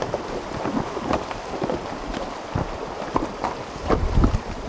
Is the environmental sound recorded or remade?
remade